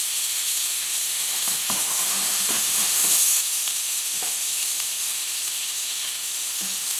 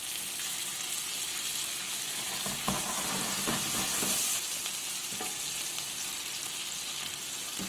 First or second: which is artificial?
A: first